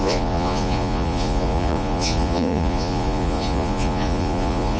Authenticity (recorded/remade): remade